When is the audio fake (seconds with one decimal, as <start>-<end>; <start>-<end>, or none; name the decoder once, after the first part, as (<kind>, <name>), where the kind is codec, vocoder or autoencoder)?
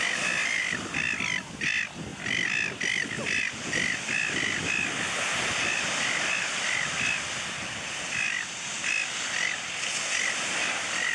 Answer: 2.1-3.4 (vocoder, BigVGAN v2)